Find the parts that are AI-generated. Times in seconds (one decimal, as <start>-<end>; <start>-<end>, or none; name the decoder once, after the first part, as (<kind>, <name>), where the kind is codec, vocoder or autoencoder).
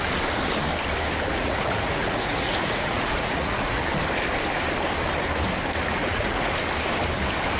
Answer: 1.3-3.8 (vocoder, Vocos); 6.0-6.5